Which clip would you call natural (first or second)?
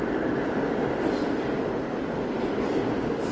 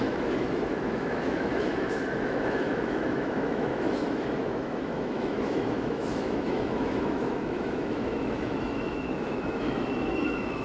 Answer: first